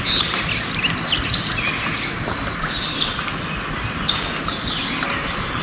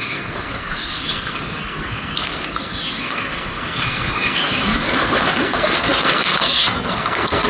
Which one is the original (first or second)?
first